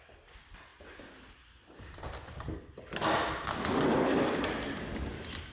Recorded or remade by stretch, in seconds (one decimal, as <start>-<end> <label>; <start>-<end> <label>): 0.0-5.5 recorded